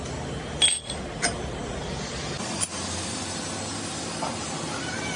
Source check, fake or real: real